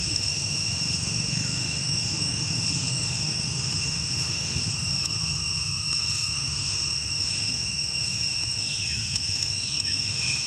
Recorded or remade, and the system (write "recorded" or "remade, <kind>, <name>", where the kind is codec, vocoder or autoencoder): remade, autoencoder, DAC-VAE